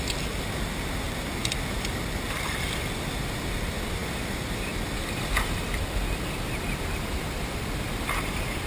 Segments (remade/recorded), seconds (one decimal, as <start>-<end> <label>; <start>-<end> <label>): 0.0-4.0 recorded; 4.0-7.9 remade; 7.9-8.7 recorded

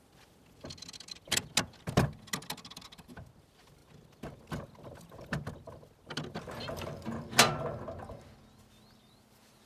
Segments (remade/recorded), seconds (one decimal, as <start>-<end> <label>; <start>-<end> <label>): 0.0-9.7 recorded